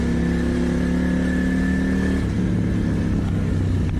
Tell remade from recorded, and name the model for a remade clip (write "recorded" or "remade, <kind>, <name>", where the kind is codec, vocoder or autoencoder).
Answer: recorded